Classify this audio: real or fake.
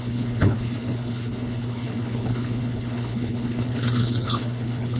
fake